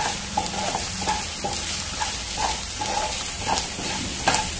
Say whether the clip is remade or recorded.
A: recorded